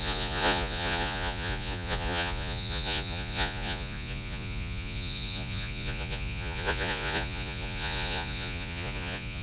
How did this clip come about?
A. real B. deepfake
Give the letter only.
B